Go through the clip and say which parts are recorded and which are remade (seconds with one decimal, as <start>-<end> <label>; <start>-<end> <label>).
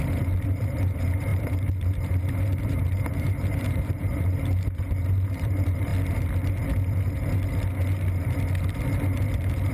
0.0-5.9 remade; 5.9-9.7 recorded